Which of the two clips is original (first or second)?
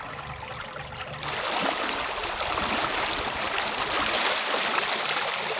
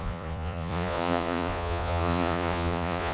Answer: first